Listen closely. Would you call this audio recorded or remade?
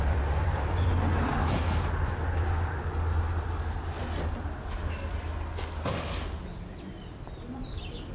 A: recorded